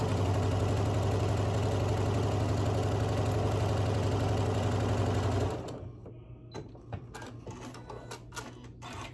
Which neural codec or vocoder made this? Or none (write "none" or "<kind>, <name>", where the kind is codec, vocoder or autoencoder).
none